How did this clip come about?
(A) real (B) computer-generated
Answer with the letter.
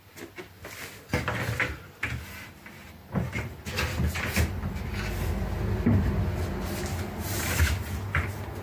A